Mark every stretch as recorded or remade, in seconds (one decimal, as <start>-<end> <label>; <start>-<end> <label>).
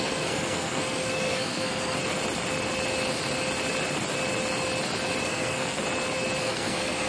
0.0-2.0 remade; 2.0-5.2 recorded; 5.2-5.8 remade; 5.8-6.4 recorded; 6.4-7.1 remade